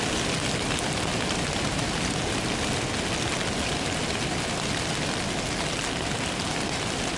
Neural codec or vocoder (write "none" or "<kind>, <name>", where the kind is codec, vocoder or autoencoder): none